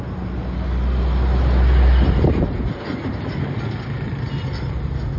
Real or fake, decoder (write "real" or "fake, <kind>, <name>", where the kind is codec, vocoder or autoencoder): real